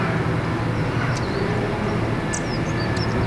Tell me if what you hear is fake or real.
real